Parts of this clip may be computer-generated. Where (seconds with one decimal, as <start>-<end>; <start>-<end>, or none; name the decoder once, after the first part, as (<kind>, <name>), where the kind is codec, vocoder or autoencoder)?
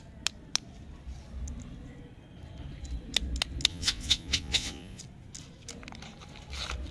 3.7-5.0 (vocoder, Vocos)